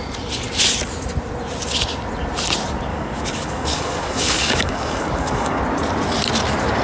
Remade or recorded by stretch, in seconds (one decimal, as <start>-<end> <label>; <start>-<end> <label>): 0.0-2.9 recorded; 2.9-5.6 remade; 5.6-6.8 recorded